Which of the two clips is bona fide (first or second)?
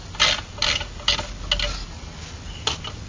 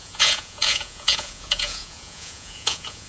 first